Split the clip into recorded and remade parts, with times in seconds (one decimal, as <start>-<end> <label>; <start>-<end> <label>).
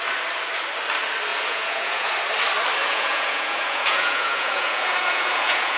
0.0-1.3 recorded; 1.3-2.1 remade; 2.1-2.8 recorded; 2.8-5.8 remade